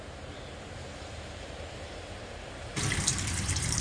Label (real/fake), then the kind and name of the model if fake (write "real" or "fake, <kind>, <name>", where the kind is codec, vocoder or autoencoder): fake, vocoder, BigVGAN v2